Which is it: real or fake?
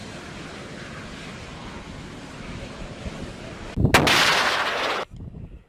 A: real